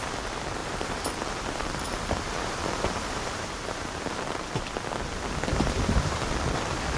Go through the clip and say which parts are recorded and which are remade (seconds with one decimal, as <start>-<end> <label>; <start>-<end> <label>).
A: 0.0-0.6 recorded; 0.6-4.2 remade; 4.2-5.5 recorded; 5.5-6.3 remade; 6.3-7.0 recorded